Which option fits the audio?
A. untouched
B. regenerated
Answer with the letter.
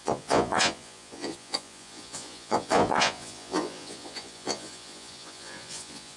B